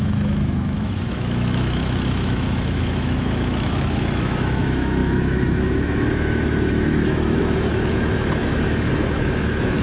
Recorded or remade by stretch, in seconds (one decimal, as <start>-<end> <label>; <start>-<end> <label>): 0.0-9.8 remade